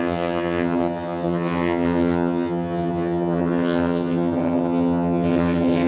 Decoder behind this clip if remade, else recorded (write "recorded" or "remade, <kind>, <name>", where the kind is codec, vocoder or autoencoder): remade, vocoder, HiFi-GAN